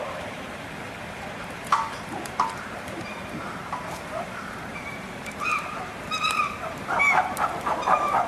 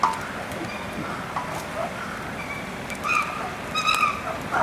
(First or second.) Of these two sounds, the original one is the second